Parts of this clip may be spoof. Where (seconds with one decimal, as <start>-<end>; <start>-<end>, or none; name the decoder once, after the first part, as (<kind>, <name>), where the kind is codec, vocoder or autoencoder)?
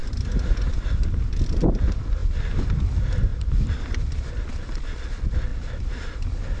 3.3-4.2 (vocoder, BigVGAN v2); 5.5-6.1